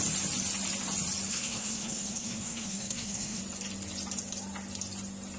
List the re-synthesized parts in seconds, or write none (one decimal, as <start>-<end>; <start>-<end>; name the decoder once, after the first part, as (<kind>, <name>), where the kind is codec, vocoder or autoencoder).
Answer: 1.3-3.4 (codec, SNAC)